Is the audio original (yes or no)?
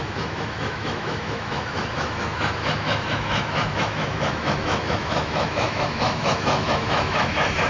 no